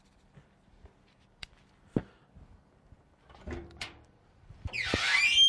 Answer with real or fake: fake